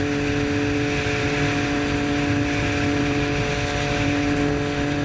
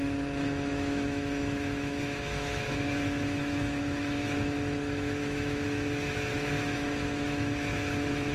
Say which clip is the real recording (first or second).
first